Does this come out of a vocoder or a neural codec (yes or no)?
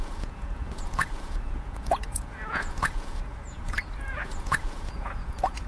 yes